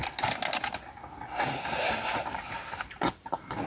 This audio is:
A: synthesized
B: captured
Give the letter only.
B